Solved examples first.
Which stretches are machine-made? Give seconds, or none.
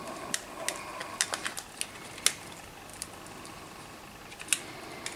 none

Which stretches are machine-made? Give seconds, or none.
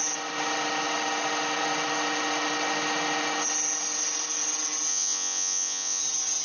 4.9-6.0 (vocoder, Vocos)